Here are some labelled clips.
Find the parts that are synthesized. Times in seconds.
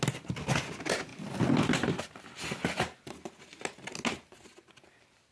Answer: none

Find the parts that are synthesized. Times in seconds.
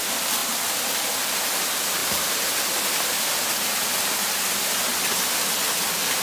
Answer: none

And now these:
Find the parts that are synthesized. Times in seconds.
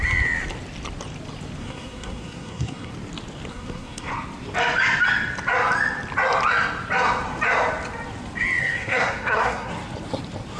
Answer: 1.6-2.9 (codec, SNAC); 3.5-4.1; 8.6-9.7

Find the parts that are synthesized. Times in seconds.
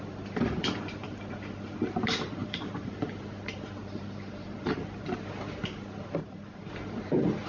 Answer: 2.4-3.0 (vocoder, BigVGAN v2); 3.8-4.8; 6.2-6.7